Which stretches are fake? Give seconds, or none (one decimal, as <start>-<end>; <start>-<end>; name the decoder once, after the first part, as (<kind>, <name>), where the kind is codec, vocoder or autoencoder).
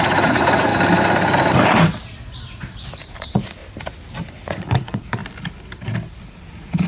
0.0-0.7 (vocoder, Vocos); 3.1-3.6; 4.3-5.2; 6.5-6.9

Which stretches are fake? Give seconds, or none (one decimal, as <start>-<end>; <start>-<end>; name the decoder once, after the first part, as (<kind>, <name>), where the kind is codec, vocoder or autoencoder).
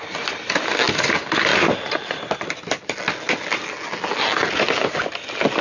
none